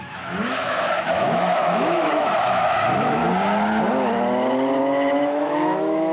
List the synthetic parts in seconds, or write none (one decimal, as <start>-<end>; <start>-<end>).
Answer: 0.0-3.2; 4.8-6.1